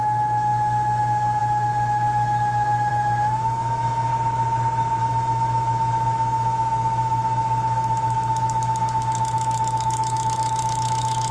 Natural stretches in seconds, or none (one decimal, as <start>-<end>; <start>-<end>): 4.1-5.0